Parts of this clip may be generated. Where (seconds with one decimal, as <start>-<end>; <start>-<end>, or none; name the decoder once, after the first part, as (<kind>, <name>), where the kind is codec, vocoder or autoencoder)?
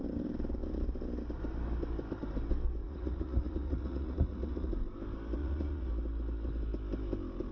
2.8-4.7 (vocoder, Vocos); 5.4-5.9